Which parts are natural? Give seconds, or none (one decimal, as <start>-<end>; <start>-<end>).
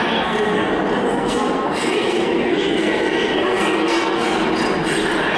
0.7-1.1; 4.3-5.4